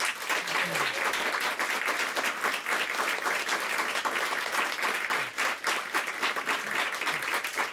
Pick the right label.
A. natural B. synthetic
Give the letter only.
A